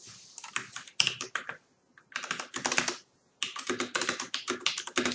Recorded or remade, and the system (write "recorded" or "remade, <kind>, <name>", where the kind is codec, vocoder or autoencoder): recorded